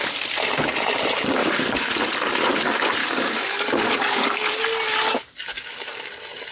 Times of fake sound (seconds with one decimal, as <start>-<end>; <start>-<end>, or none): 1.4-1.9; 3.0-4.6; 5.5-6.1